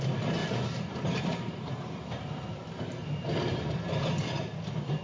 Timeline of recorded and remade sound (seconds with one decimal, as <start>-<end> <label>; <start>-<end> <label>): 0.0-0.4 recorded; 0.4-3.4 remade; 3.4-5.0 recorded